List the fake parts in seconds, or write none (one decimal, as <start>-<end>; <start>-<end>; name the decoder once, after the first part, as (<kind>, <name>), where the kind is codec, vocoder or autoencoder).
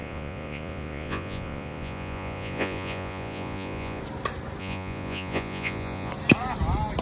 0.0-4.0 (vocoder, Vocos); 4.6-6.1